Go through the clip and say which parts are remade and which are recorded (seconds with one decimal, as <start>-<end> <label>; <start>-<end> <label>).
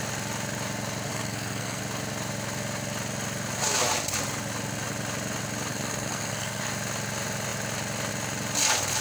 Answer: 0.0-1.1 recorded; 1.1-1.8 remade; 1.8-5.7 recorded; 5.7-6.7 remade; 6.7-9.0 recorded